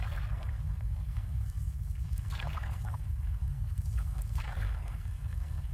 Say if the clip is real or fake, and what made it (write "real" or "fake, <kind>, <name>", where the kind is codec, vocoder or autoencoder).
fake, codec, SNAC